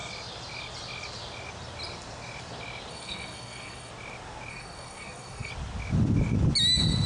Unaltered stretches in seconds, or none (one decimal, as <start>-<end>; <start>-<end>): 0.0-2.9; 3.9-4.5; 5.5-7.1